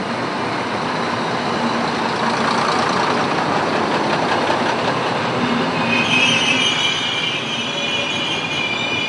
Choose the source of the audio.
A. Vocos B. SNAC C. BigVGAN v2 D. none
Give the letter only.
D